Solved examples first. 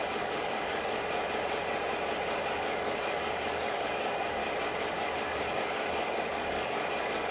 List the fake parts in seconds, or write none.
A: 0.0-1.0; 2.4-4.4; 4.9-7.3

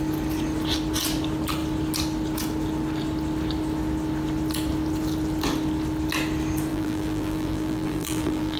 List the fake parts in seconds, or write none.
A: 6.7-8.6

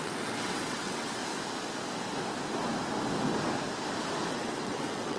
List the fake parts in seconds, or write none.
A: 0.0-1.2; 4.3-5.2

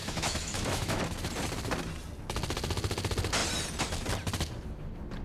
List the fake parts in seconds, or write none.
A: 0.0-1.0